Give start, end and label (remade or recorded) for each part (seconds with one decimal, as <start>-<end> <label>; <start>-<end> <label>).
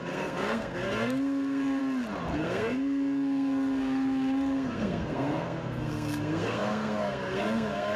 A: 0.0-1.8 remade; 1.8-2.3 recorded; 2.3-8.0 remade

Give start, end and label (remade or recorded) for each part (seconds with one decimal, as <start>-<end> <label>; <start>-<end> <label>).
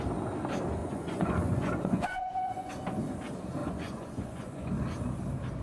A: 0.0-0.8 recorded; 0.8-2.7 remade; 2.7-3.6 recorded; 3.6-4.7 remade; 4.7-5.6 recorded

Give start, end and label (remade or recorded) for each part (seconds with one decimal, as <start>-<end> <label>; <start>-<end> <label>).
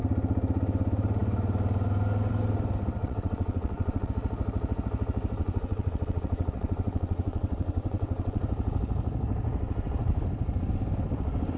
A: 0.0-3.0 recorded; 3.0-4.1 remade; 4.1-5.4 recorded; 5.4-8.4 remade; 8.4-11.6 recorded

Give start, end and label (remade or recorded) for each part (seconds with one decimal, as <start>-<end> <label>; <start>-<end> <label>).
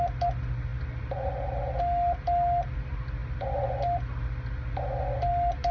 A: 0.0-5.7 recorded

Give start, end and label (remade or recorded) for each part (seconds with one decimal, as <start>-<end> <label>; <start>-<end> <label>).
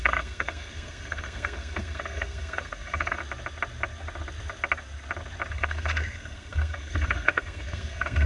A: 0.0-3.2 remade; 3.2-5.5 recorded; 5.5-8.3 remade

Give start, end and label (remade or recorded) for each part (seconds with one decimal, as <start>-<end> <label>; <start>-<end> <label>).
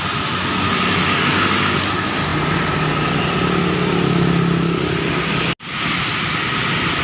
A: 0.0-1.0 recorded; 1.0-1.8 remade; 1.8-7.0 recorded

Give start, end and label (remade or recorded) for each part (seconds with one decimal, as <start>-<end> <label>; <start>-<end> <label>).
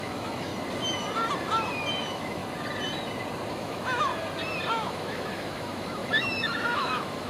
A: 0.0-0.5 remade; 0.5-1.9 recorded; 1.9-2.4 remade; 2.4-3.5 recorded; 3.5-4.1 remade; 4.1-4.7 recorded; 4.7-7.3 remade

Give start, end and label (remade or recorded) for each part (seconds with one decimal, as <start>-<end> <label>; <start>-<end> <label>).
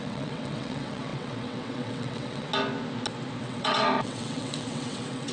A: 0.0-2.5 remade; 2.5-3.4 recorded; 3.4-5.3 remade